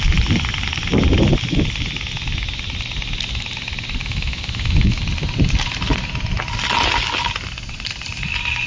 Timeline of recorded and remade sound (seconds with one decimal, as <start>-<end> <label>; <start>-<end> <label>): 0.0-4.0 recorded; 4.0-5.0 remade; 5.0-8.7 recorded